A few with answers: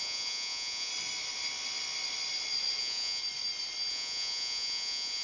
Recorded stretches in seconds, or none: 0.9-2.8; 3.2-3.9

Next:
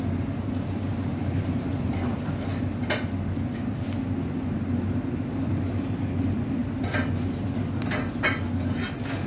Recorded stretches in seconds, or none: 0.0-1.1; 2.1-9.3